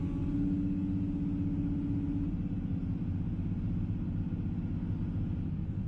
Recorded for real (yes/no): yes